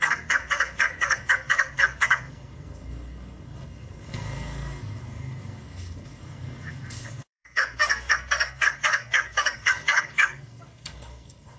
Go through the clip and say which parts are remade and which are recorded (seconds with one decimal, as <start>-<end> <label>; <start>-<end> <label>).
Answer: 0.0-11.6 remade